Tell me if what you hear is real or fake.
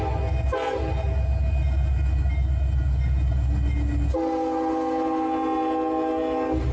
real